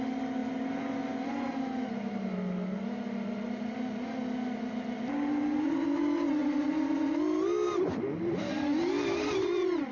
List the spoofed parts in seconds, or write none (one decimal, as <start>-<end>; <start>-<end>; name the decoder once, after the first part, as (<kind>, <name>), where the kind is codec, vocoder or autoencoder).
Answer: none